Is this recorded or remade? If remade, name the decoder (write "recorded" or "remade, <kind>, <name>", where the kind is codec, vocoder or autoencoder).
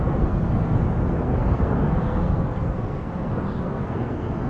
remade, codec, SNAC